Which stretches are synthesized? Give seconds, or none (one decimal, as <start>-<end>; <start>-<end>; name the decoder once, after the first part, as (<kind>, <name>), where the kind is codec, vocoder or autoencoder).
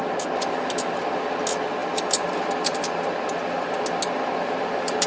1.8-2.8 (vocoder, BigVGAN v2)